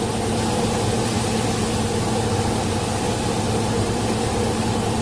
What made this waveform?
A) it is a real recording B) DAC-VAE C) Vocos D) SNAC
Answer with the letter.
A